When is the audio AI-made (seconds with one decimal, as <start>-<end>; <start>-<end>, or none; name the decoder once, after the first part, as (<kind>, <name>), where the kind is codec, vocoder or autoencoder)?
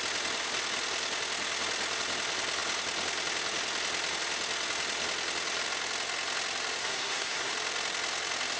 6.8-7.5 (codec, SNAC)